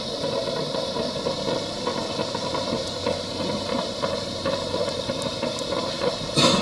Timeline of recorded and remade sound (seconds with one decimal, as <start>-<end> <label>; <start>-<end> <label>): 0.0-6.6 remade